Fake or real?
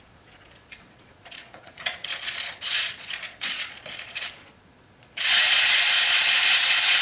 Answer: fake